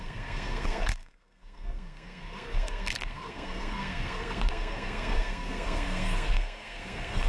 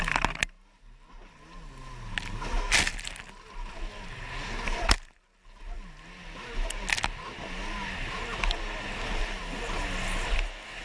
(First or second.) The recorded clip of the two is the second